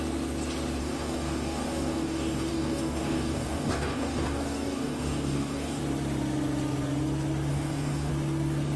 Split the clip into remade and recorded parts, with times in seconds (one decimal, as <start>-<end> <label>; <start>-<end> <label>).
0.0-0.8 recorded; 0.8-5.8 remade; 5.8-7.5 recorded; 7.5-8.1 remade; 8.1-8.8 recorded